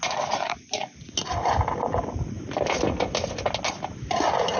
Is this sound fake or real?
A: real